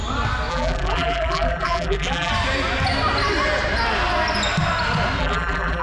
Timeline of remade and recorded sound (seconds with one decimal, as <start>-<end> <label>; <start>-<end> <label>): 0.0-0.5 recorded; 0.5-2.3 remade; 2.3-5.2 recorded; 5.2-5.8 remade